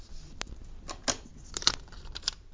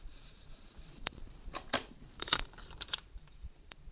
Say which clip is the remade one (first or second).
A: second